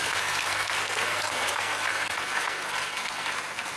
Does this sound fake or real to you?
fake